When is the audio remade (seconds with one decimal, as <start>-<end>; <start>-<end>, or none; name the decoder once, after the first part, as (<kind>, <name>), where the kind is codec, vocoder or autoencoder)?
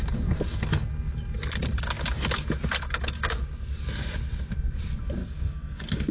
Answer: 5.2-6.1 (codec, SNAC)